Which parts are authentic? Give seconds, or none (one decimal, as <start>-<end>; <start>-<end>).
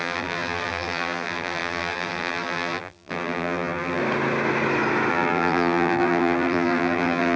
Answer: 4.0-5.1